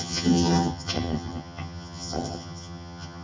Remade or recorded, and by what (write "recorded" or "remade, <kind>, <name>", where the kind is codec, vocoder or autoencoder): remade, vocoder, HiFi-GAN